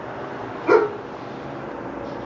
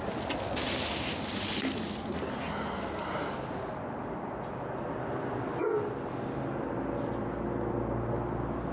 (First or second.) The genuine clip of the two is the second